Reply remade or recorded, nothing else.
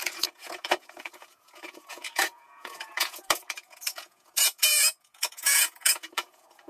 remade